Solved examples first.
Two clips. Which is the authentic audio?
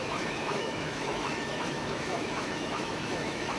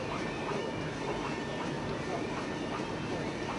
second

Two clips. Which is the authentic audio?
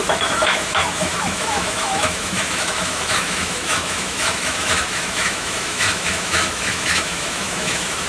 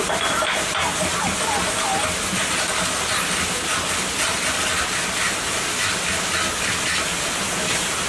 second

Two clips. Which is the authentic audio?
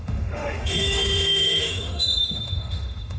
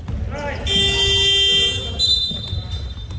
second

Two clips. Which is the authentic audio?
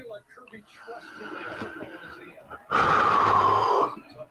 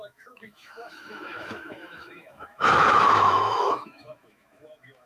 first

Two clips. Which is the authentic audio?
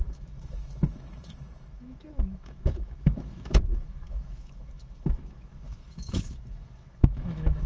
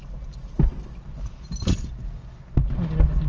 second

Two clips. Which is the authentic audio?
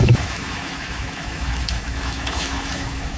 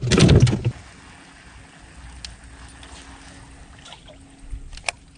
second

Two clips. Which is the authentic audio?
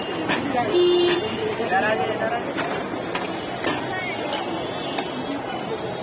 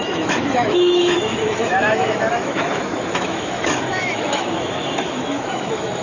first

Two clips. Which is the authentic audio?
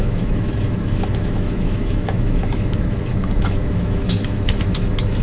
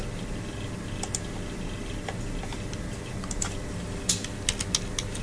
second